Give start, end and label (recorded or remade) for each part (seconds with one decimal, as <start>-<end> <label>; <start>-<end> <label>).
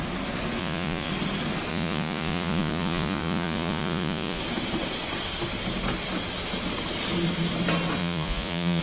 0.0-0.6 recorded; 0.6-1.1 remade; 1.1-1.7 recorded; 1.7-4.4 remade; 4.4-8.0 recorded; 8.0-8.8 remade